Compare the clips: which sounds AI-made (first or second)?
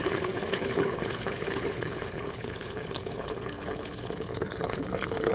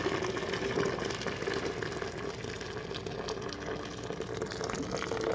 first